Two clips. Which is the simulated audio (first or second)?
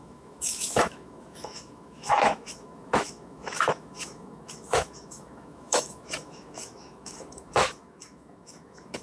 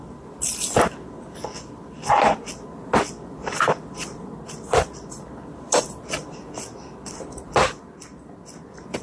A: first